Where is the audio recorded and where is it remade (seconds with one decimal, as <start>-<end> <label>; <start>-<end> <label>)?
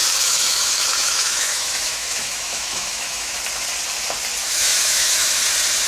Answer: 0.0-3.4 remade; 3.4-4.4 recorded; 4.4-5.4 remade; 5.4-5.9 recorded